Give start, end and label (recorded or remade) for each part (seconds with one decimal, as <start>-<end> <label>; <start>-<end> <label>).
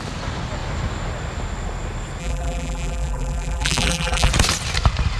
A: 0.0-2.2 recorded; 2.2-4.3 remade; 4.3-5.2 recorded